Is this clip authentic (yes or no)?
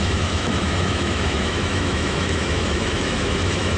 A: no